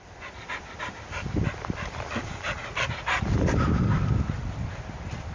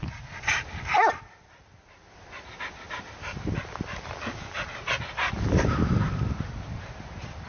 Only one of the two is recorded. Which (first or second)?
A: second